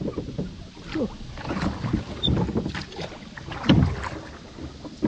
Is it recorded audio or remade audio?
recorded